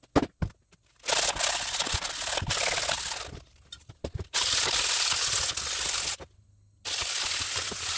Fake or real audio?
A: real